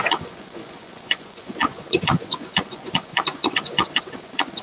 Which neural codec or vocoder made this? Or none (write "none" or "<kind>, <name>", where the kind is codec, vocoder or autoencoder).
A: vocoder, Vocos